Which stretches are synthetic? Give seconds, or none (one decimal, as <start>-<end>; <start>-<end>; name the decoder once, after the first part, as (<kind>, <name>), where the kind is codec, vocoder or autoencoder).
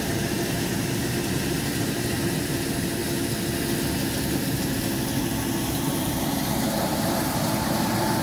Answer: 0.0-3.0 (vocoder, BigVGAN v2); 5.7-8.2